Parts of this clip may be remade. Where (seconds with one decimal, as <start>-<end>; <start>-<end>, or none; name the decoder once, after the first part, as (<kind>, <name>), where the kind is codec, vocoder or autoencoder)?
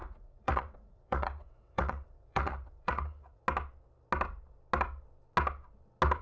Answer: 0.0-3.4 (vocoder, WaveNeXt)